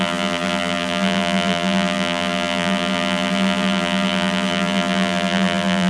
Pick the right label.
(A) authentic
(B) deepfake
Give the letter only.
B